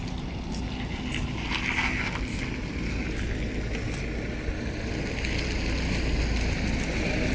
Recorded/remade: recorded